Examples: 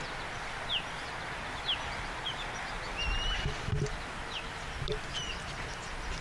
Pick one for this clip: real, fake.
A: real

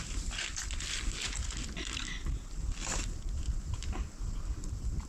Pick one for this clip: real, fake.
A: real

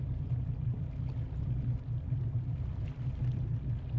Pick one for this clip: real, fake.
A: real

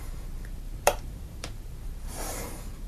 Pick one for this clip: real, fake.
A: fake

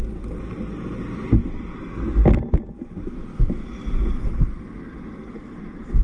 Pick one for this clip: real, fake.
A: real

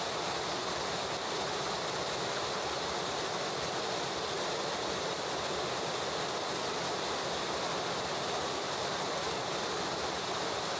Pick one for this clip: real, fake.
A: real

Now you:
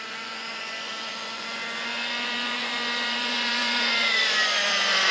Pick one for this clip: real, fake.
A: fake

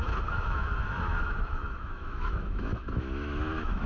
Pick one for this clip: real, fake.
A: fake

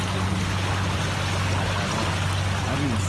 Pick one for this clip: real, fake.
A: real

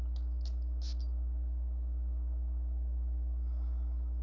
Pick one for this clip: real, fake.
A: real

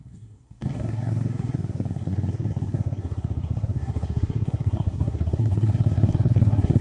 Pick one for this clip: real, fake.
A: fake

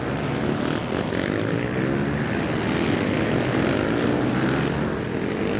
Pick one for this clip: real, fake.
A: real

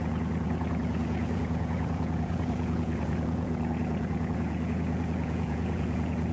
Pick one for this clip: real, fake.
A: fake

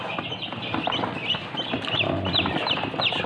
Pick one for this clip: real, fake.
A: real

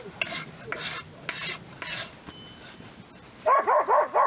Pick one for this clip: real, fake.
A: real